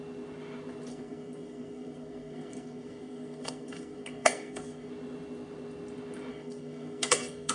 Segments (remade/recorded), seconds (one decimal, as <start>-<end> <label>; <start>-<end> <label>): 0.0-0.9 recorded; 0.9-4.9 remade; 4.9-6.3 recorded; 6.3-7.5 remade

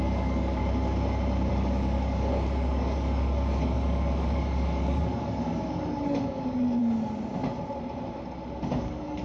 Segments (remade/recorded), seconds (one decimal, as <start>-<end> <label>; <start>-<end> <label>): 0.0-0.6 remade; 0.6-1.5 recorded; 1.5-6.8 remade; 6.8-8.7 recorded; 8.7-9.2 remade

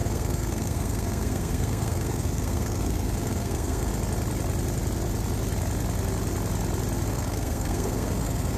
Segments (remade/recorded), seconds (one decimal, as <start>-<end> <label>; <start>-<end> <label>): 0.0-3.9 remade; 3.9-7.1 recorded; 7.1-8.6 remade

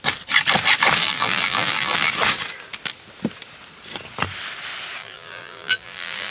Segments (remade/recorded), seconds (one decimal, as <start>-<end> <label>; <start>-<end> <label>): 0.0-1.0 recorded; 1.0-2.1 remade; 2.1-5.0 recorded; 5.0-6.3 remade

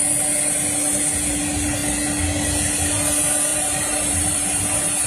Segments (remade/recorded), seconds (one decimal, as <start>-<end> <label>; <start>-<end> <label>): 0.0-3.5 recorded; 3.5-4.6 remade; 4.6-5.1 recorded